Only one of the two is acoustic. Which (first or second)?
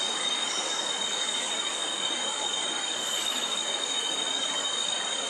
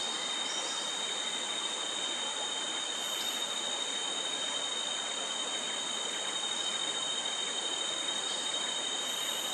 second